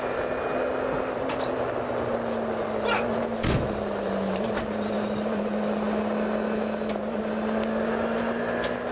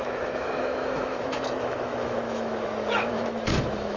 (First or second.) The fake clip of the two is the second